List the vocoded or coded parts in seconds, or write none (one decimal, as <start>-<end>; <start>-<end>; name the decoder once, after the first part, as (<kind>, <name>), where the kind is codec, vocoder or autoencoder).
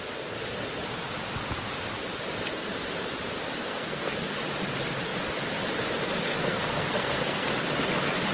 3.6-4.1 (codec, SNAC); 6.3-7.5